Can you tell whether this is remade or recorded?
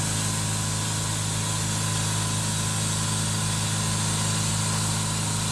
recorded